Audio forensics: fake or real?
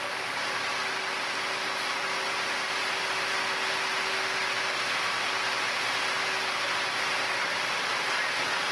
real